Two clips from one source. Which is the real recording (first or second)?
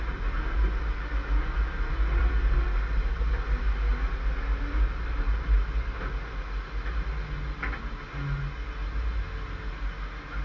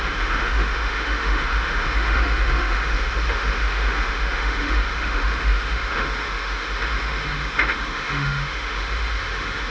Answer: first